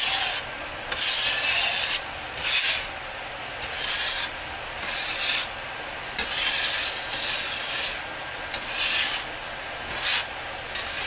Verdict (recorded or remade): recorded